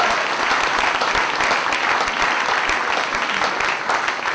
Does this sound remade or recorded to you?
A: recorded